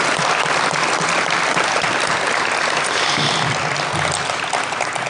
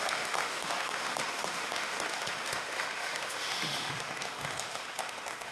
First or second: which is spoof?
second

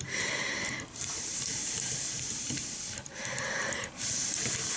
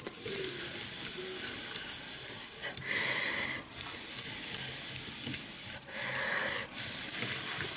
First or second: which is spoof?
first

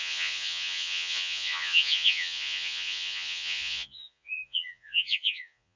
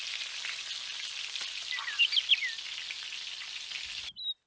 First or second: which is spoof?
first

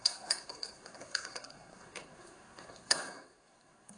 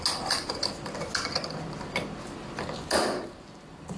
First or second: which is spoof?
first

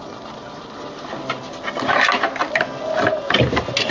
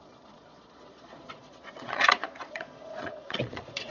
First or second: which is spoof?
second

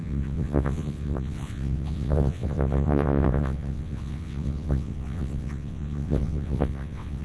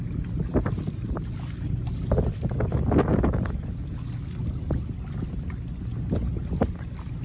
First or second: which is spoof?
first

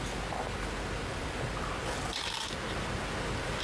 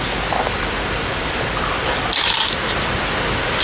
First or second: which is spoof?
second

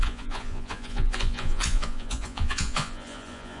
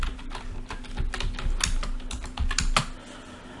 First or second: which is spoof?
first